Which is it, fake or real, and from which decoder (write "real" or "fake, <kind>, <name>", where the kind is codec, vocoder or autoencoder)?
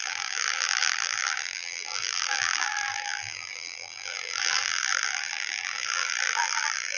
fake, vocoder, BigVGAN v2